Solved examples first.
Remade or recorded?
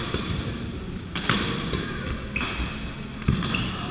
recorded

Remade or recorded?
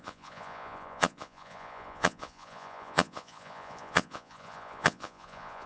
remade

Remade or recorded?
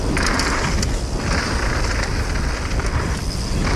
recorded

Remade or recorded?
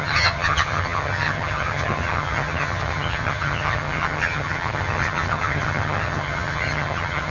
remade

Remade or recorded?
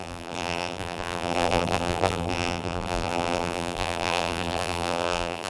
remade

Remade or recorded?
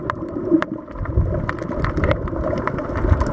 remade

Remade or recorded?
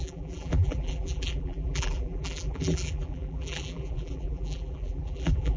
remade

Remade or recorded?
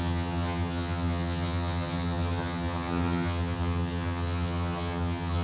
remade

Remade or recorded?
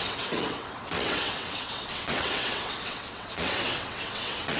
remade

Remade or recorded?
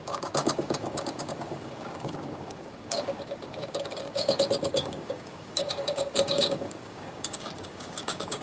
remade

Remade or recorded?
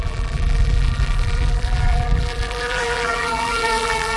remade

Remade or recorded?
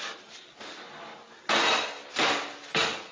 recorded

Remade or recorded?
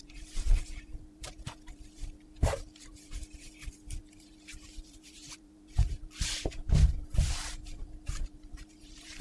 remade